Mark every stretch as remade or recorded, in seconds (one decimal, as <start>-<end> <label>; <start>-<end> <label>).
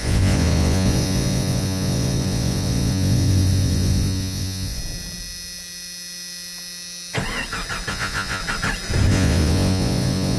0.0-4.8 remade; 4.8-7.9 recorded; 7.9-8.4 remade; 8.4-9.1 recorded; 9.1-10.4 remade